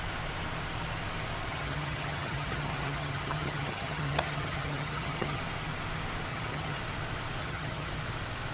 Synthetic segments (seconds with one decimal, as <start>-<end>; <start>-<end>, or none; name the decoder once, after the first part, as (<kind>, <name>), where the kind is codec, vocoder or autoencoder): 1.5-5.4 (vocoder, HiFi-GAN); 6.3-6.8; 7.4-7.9

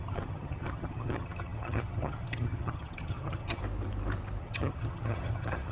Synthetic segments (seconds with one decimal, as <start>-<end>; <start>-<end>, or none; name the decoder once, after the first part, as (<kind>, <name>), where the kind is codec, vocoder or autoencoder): 0.0-3.6 (vocoder, HiFi-GAN); 4.4-5.7

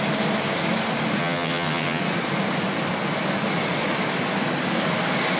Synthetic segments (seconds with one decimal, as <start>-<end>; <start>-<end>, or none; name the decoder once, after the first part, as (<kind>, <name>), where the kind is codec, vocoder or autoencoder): 1.2-2.0 (vocoder, HiFi-GAN)